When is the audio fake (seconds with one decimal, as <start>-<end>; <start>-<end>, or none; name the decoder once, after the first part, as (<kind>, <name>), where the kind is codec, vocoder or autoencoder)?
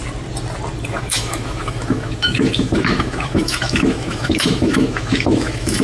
0.9-5.8 (autoencoder, DAC-VAE)